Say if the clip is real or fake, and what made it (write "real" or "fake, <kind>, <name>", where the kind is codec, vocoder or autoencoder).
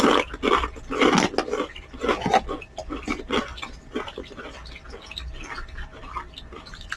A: real